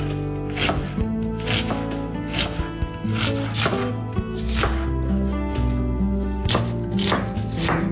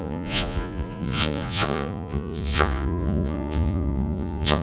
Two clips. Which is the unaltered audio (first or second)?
first